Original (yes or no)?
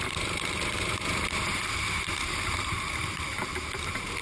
no